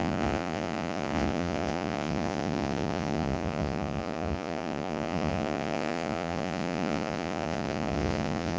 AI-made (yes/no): yes